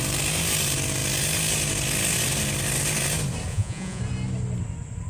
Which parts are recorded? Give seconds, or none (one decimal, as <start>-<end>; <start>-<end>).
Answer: 0.0-3.5; 4.0-5.1